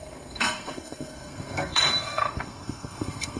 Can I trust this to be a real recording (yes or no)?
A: no